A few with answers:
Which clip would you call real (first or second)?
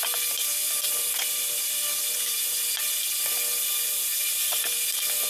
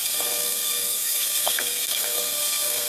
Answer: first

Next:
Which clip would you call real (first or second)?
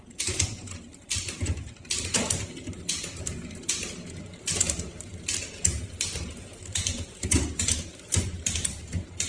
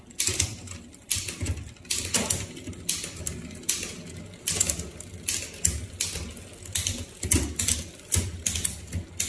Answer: second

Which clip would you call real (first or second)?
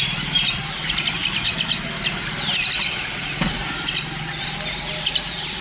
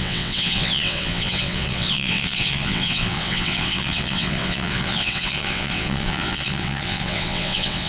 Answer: first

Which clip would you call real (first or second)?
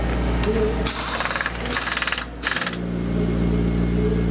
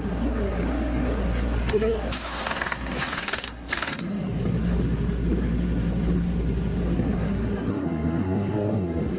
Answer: first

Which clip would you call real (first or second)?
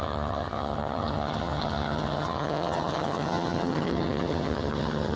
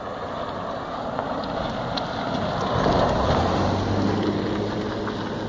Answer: second